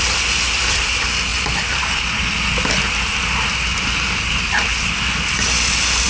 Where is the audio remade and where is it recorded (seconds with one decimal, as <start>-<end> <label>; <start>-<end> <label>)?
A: 0.0-6.1 recorded